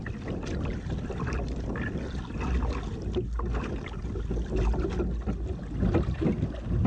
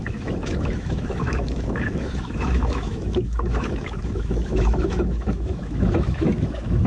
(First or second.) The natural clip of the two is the first